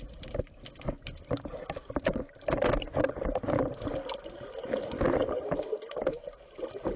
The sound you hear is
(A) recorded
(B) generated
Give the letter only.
A